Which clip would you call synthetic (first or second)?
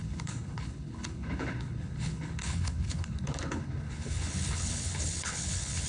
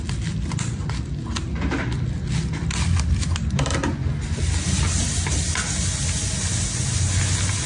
first